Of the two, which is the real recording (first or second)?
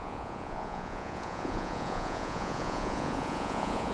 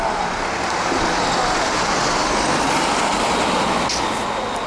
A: second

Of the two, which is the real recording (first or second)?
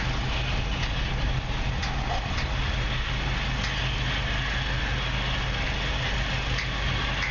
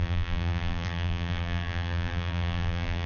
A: first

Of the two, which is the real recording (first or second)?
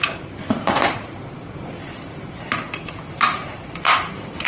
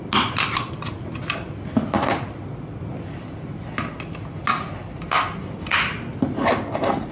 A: second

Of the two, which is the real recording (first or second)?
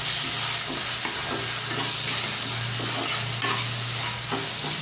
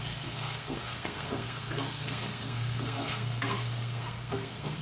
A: first